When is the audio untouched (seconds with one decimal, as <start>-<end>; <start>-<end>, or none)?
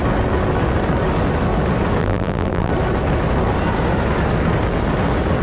0.0-2.0; 2.7-5.4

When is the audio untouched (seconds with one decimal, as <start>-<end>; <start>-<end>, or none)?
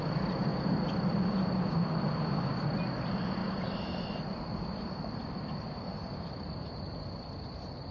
0.0-3.4; 5.9-7.9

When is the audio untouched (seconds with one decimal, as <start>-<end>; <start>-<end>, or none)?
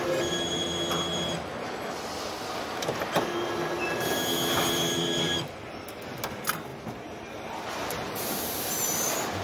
0.0-6.7; 8.7-9.4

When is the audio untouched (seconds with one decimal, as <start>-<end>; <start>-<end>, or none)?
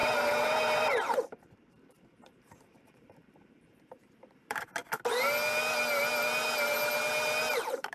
4.8-7.5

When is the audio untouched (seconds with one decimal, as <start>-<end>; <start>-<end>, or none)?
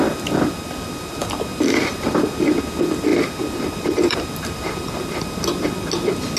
0.0-1.2; 2.1-3.1; 5.2-6.4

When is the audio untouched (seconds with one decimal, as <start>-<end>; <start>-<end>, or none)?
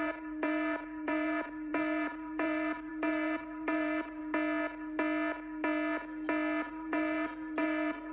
4.2-6.7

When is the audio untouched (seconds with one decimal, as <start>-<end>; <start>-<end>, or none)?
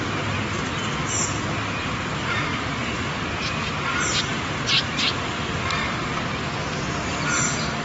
0.0-2.5; 3.2-4.3; 6.1-7.8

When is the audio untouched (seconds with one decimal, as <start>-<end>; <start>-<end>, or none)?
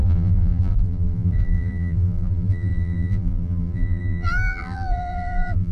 none